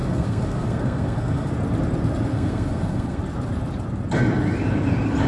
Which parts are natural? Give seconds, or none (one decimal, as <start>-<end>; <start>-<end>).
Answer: 1.5-2.3; 3.2-5.3